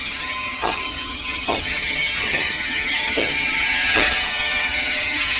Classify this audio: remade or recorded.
remade